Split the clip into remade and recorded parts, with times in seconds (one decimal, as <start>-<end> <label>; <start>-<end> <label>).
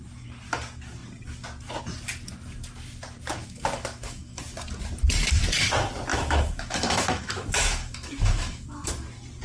0.0-3.4 recorded; 3.4-4.4 remade; 4.4-6.1 recorded; 6.1-8.9 remade; 8.9-9.4 recorded